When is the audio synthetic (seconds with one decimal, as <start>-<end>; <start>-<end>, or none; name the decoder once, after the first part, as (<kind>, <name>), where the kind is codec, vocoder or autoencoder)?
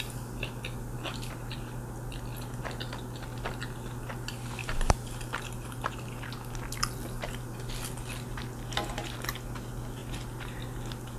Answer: 4.6-5.8 (vocoder, BigVGAN v2)